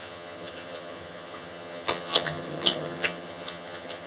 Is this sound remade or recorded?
remade